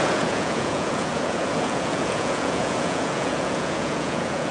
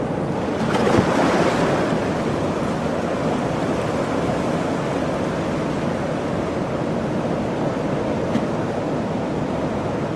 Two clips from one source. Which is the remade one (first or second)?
first